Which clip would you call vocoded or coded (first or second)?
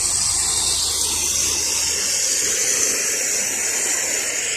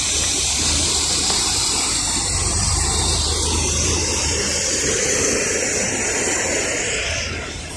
second